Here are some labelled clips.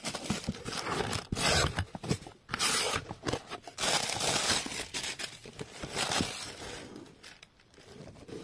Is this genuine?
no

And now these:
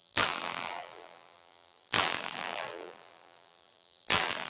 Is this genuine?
no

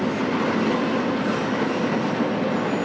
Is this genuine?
yes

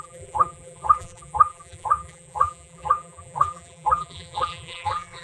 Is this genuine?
no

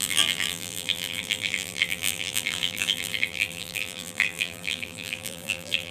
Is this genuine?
no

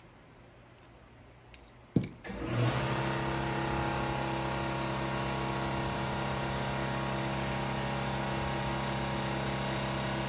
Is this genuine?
yes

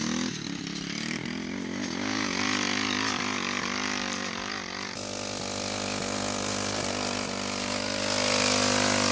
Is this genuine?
yes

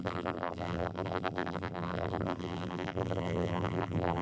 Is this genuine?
no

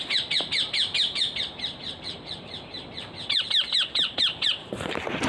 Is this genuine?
no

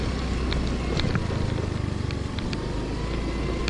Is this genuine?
yes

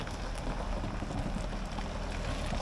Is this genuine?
yes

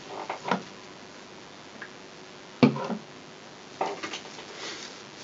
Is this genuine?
yes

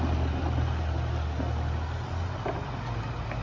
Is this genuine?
yes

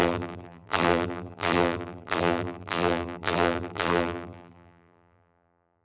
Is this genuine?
no